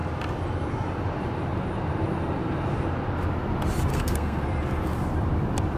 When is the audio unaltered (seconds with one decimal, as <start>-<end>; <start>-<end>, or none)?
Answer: 0.0-3.9; 4.4-5.8